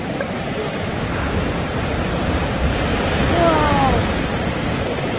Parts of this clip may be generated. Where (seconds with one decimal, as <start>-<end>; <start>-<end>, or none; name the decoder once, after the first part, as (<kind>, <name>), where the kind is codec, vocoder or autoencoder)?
none

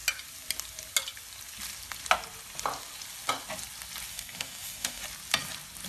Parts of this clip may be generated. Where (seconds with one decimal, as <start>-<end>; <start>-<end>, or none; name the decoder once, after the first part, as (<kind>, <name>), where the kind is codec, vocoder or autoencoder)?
4.1-5.0 (codec, DAC)

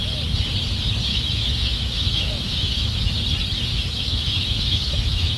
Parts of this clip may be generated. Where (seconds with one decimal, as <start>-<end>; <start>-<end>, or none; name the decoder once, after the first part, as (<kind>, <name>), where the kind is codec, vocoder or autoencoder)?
1.1-3.1 (autoencoder, DAC-VAE); 3.7-5.4

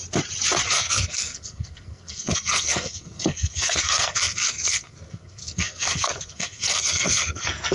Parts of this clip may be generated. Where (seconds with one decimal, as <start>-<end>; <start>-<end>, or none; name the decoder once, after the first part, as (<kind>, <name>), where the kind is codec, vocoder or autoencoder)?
0.7-7.7 (codec, SNAC)

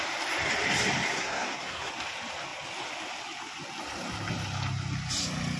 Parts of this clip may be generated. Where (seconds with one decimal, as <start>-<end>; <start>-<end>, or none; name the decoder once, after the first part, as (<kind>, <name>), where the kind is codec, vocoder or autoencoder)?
1.1-1.9 (codec, SNAC)